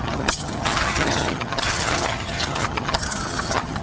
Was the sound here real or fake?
fake